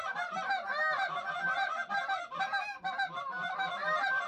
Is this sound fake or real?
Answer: real